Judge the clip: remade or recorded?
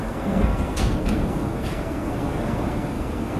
remade